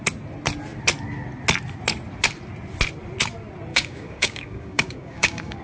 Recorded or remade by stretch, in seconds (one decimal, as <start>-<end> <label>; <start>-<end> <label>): 0.0-3.7 recorded; 3.7-5.6 remade